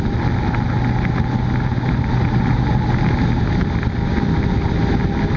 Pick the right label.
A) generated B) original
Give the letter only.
B